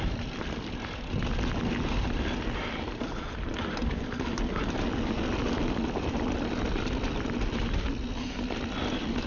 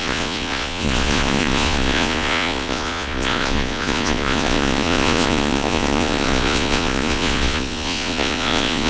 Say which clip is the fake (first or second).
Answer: second